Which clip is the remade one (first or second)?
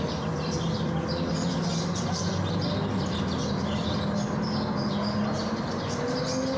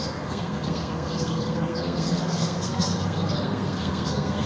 second